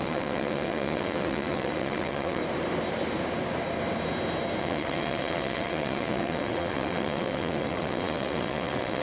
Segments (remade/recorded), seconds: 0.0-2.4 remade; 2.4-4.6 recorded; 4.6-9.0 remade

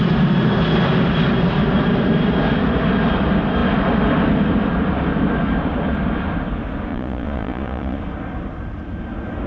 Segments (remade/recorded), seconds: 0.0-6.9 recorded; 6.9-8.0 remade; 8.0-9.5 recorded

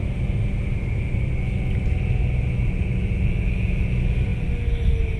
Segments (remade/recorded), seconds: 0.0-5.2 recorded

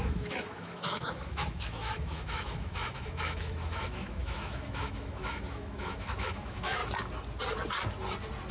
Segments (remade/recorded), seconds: 0.0-6.8 remade; 6.8-8.5 recorded

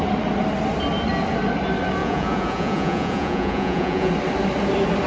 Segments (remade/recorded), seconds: 0.0-2.0 recorded; 2.0-4.1 remade; 4.1-5.1 recorded

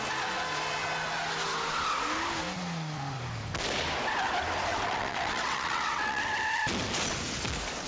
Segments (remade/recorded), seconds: 0.0-4.7 recorded; 4.7-6.2 remade; 6.2-7.9 recorded